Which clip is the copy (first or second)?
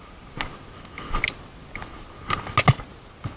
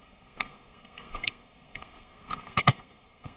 second